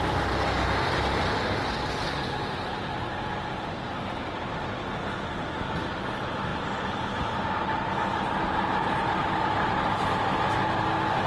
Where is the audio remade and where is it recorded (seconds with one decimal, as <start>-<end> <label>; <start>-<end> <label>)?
0.0-11.3 recorded